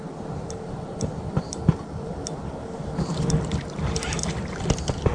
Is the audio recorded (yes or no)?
yes